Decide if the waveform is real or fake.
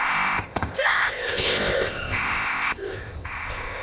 fake